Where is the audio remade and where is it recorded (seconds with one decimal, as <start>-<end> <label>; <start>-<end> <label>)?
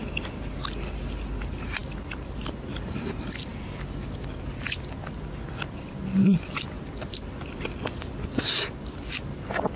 0.0-9.8 recorded